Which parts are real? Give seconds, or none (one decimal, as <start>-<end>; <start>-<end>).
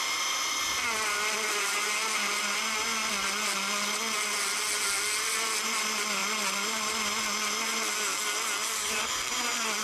0.0-8.6; 9.2-9.8